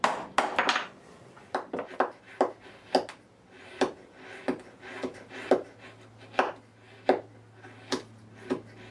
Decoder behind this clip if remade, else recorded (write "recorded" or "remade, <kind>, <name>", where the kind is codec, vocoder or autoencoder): recorded